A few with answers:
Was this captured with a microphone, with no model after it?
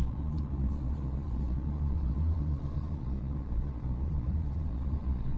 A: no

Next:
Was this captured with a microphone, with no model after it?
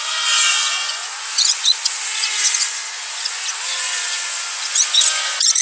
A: no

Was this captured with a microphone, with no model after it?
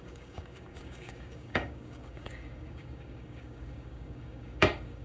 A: no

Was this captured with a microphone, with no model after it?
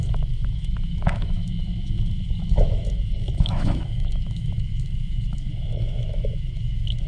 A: no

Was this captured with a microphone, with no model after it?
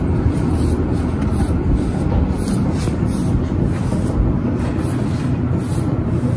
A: yes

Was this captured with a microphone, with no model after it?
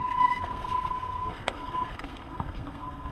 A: no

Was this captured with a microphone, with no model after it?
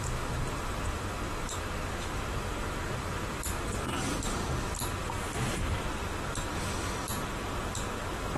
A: yes